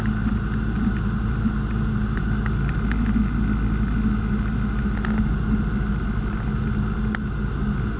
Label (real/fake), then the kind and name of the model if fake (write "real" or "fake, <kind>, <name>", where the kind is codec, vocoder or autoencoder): real